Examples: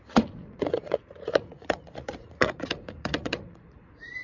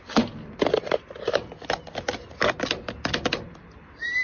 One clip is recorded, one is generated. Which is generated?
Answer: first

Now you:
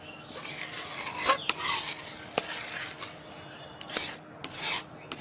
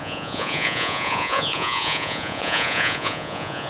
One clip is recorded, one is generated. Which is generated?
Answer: second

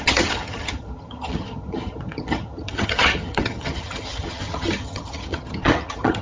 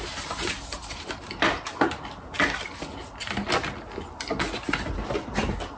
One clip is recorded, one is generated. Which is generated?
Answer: first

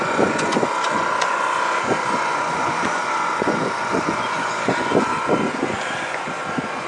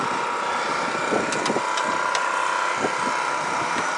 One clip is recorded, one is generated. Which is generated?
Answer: first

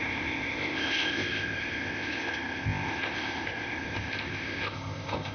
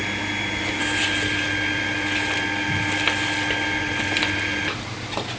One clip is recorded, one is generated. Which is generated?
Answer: first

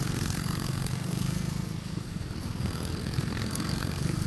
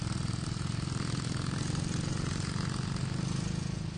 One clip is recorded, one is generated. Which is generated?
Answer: first